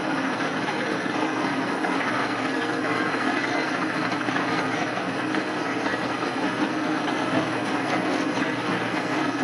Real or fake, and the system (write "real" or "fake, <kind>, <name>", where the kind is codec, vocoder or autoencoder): fake, codec, SNAC